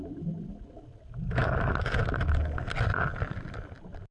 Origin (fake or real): real